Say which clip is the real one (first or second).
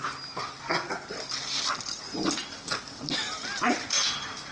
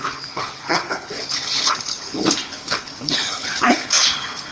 first